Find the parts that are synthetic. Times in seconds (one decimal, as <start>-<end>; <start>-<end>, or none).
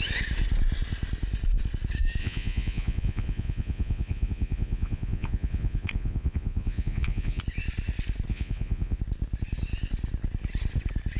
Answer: 2.2-7.4; 8.3-9.0